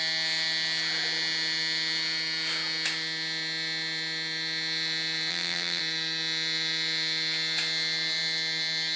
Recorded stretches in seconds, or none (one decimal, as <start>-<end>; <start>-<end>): 0.0-5.3; 5.8-9.0

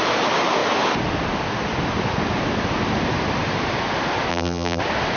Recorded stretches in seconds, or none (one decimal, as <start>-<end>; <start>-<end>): 0.0-4.3; 4.8-5.2

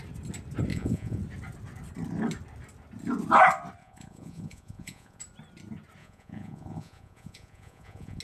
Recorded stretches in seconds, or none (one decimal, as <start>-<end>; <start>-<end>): 0.0-0.7; 1.2-3.8; 5.2-6.0

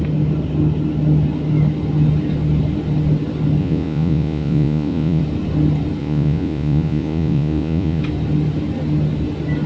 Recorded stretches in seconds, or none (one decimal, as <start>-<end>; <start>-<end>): 0.0-3.6; 5.2-6.0; 8.0-9.7